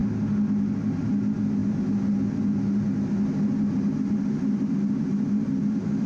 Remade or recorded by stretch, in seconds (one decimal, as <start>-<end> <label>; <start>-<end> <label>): 0.0-6.1 recorded